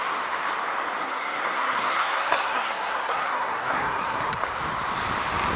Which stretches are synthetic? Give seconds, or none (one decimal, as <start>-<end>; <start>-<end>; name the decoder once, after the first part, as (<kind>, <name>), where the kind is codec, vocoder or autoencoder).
1.0-4.4 (codec, SNAC)